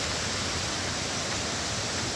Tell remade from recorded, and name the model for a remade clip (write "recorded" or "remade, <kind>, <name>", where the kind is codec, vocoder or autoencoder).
recorded